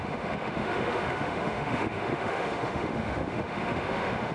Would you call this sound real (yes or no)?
no